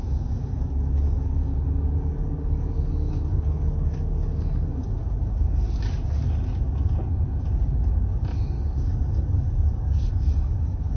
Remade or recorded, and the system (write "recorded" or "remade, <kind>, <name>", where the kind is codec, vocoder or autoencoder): recorded